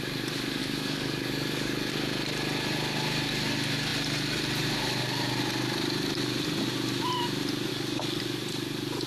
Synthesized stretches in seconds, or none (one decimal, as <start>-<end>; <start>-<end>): 0.6-1.9; 7.7-8.2